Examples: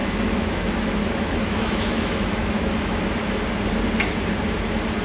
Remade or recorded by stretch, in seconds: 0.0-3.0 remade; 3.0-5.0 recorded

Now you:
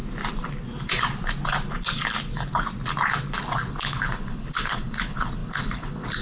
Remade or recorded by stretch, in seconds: 0.0-3.7 recorded; 3.7-6.2 remade